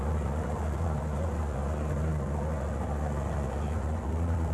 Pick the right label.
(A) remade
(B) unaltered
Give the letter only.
A